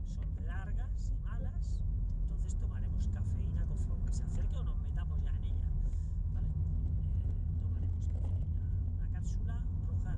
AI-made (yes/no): no